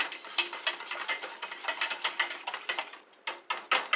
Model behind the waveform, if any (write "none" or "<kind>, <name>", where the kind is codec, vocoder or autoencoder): none